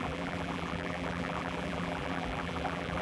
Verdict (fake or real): fake